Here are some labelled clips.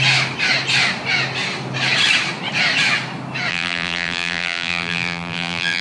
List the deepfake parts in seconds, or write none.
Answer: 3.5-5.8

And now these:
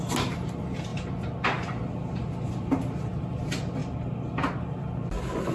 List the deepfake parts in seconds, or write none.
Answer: none

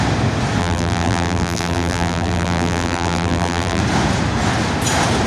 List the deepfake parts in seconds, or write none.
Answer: 0.6-3.8